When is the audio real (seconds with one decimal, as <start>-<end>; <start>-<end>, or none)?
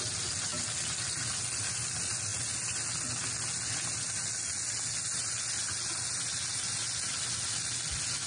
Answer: 0.0-8.3